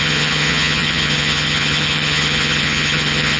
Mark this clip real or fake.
fake